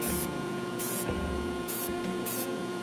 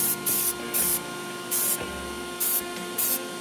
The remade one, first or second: first